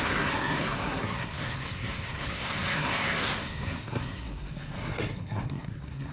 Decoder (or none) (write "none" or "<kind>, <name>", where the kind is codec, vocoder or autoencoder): codec, SNAC